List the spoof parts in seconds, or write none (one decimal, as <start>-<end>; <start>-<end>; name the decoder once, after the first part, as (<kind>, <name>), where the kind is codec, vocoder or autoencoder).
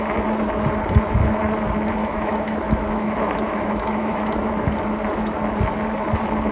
2.0-4.5 (autoencoder, DAC-VAE)